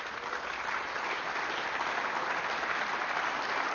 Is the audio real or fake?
real